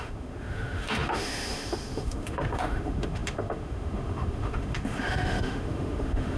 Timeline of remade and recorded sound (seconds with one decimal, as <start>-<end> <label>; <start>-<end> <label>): 0.0-6.4 remade